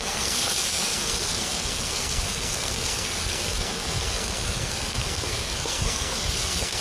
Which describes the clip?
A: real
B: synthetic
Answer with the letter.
B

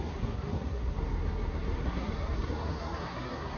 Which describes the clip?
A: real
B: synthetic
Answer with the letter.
B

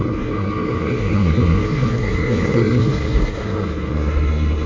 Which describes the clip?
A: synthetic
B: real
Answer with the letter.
A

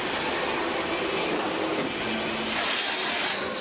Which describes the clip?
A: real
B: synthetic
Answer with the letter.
A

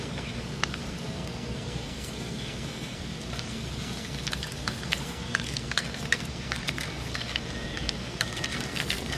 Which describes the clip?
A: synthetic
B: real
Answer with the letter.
A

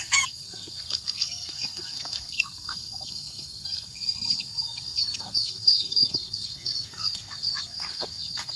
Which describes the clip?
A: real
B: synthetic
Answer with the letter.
B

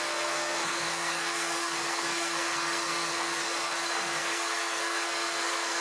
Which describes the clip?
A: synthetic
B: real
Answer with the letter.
A